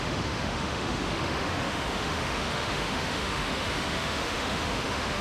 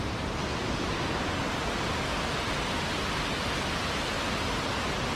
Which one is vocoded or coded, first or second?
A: first